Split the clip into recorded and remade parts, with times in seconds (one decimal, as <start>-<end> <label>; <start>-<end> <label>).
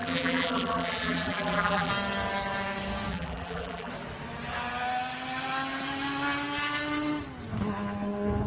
0.0-1.9 remade; 1.9-3.1 recorded; 3.1-3.9 remade; 3.9-8.5 recorded